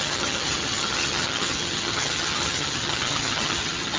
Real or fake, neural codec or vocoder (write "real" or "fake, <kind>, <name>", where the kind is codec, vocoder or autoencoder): fake, vocoder, HiFi-GAN